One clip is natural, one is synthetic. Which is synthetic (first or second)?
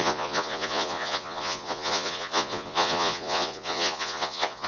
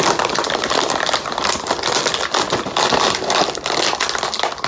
first